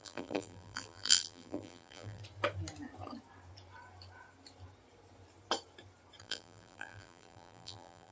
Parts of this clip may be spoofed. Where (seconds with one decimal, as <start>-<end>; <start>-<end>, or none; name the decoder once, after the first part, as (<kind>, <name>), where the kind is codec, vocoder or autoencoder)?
0.0-2.2 (vocoder, BigVGAN v2); 6.2-8.1